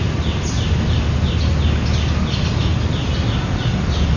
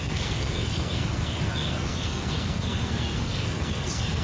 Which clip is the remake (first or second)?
second